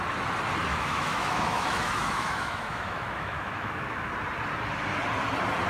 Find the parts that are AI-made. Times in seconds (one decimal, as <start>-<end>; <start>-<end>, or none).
0.7-4.1